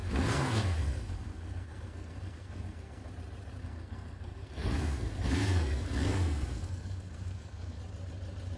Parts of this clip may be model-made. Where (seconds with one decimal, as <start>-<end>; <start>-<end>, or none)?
0.0-3.1; 3.6-7.8